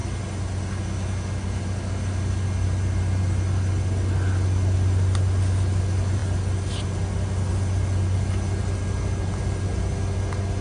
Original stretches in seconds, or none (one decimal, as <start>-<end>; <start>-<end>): 0.0-10.6